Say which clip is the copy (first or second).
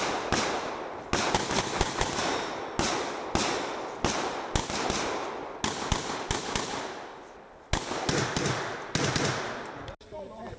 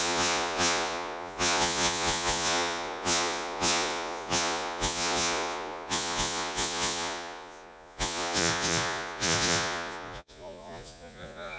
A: second